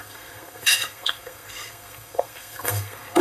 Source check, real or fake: fake